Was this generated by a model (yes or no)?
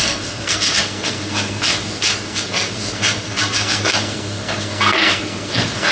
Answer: yes